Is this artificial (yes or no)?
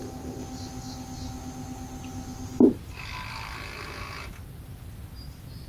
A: no